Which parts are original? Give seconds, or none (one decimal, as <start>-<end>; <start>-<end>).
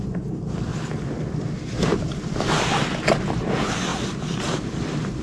0.7-2.0